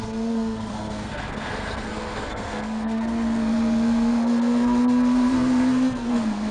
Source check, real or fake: fake